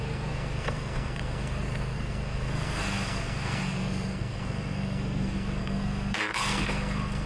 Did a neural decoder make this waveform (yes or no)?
yes